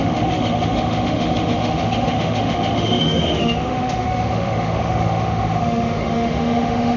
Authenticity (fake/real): fake